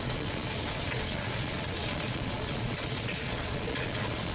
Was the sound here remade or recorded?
remade